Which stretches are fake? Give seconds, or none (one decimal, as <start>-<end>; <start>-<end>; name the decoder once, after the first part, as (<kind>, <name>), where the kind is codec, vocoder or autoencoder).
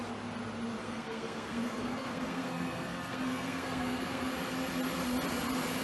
0.8-4.3 (codec, SNAC)